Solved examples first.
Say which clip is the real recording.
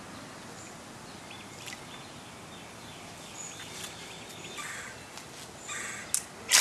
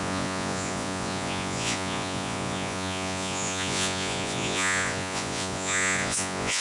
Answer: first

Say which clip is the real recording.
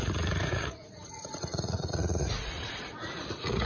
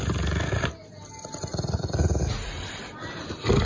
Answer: second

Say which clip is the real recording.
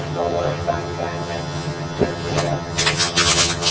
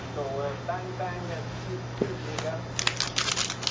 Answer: second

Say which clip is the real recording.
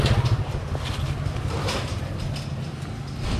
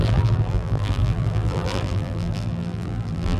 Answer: first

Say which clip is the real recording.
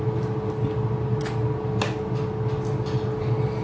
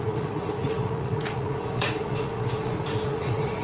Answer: first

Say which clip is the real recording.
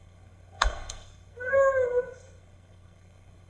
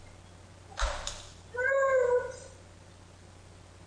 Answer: second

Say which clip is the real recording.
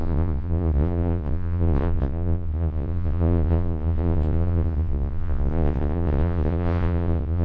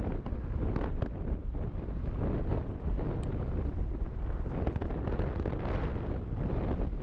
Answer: second